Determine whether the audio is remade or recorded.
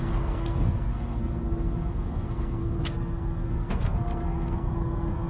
remade